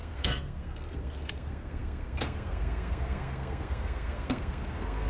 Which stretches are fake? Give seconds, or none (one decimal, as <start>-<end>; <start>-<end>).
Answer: 0.0-5.1

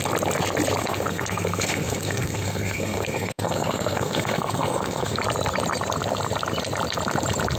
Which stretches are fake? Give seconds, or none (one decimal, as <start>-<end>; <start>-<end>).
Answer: 0.8-5.2